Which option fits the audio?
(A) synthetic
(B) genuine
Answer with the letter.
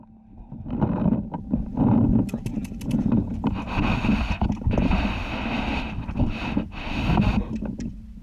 B